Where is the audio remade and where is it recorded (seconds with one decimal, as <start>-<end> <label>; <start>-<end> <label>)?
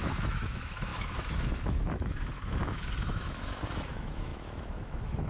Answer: 0.0-5.3 remade